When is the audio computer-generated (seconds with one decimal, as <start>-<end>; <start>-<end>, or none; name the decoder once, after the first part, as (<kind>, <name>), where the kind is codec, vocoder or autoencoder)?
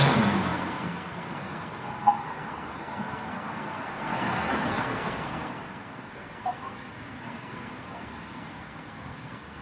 0.0-9.6 (codec, SNAC)